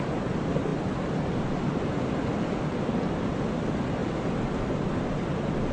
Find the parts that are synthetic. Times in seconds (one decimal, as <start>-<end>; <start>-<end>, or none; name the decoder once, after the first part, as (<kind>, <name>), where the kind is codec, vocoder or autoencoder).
none